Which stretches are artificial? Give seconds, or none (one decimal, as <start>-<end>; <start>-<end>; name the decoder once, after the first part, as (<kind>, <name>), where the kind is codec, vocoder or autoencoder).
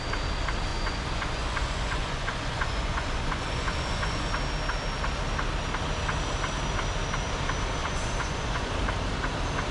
0.7-4.3 (vocoder, Vocos); 7.8-8.7